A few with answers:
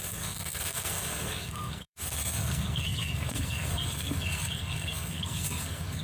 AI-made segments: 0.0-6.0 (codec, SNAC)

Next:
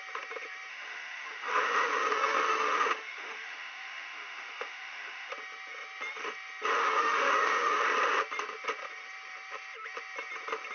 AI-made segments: 0.7-5.3 (autoencoder, DAC-VAE); 6.8-7.8

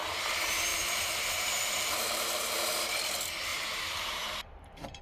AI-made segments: 0.7-2.5 (vocoder, BigVGAN v2); 3.5-5.0

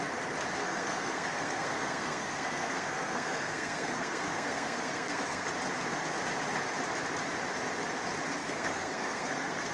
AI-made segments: 0.6-5.5 (codec, SNAC); 8.4-9.7

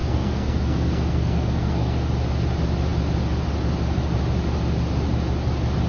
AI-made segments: 0.0-2.1 (codec, SNAC)

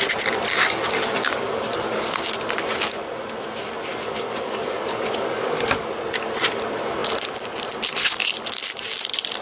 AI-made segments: 0.5-2.3 (codec, DAC); 3.9-5.9

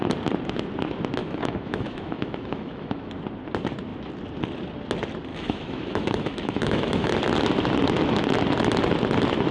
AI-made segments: 1.2-3.1 (autoencoder, DAC-VAE); 5.3-7.1

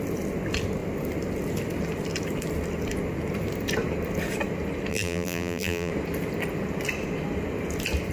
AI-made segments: 4.9-5.9 (vocoder, BigVGAN v2)